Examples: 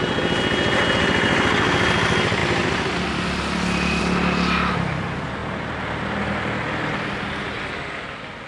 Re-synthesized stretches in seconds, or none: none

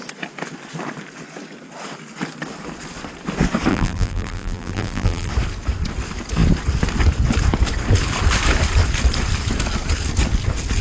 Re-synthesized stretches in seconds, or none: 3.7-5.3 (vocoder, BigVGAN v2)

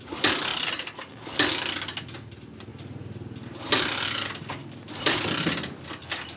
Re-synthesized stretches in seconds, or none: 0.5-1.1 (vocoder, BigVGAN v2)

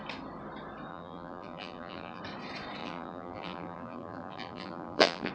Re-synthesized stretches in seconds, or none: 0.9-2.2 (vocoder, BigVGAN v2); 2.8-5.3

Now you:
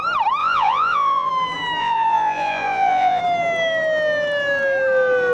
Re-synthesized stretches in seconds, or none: 0.4-1.3 (vocoder, Vocos); 1.8-3.2